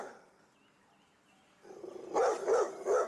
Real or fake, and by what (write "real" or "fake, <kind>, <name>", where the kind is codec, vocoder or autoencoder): real